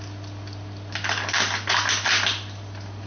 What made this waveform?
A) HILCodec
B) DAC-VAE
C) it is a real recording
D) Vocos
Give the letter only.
C